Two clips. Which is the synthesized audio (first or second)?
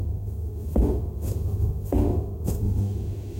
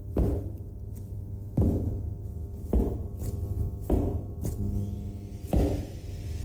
first